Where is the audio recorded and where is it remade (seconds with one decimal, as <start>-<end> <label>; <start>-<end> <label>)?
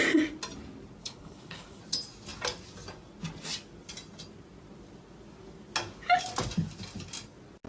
0.0-1.0 recorded; 1.0-1.8 remade; 1.8-7.7 recorded